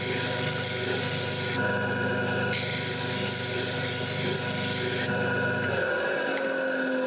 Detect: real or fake real